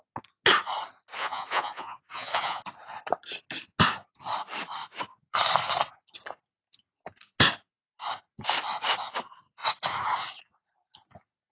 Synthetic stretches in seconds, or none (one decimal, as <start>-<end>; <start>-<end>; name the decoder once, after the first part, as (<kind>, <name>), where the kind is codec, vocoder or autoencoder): 1.2-2.6 (vocoder, Vocos)